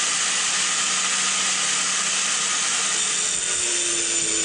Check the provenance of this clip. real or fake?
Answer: real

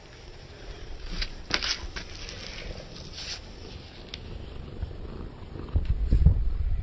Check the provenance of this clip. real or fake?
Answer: real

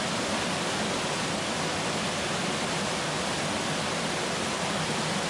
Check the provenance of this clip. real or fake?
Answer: real